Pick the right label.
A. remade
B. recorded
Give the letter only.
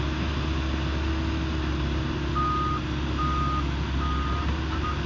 B